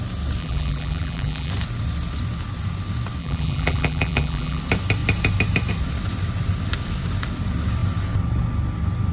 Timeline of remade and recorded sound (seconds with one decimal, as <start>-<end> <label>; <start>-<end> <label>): 0.0-0.4 recorded; 0.4-1.5 remade; 1.5-3.2 recorded; 3.2-4.6 remade; 4.6-9.1 recorded